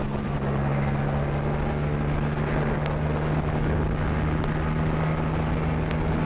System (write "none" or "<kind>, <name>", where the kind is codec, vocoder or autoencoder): none